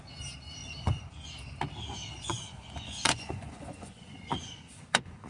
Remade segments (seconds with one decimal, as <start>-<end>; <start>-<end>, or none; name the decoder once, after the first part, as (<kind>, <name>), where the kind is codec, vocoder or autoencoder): 0.6-1.4 (vocoder, Vocos); 2.0-5.3